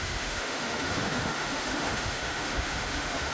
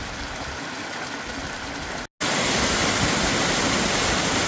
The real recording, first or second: second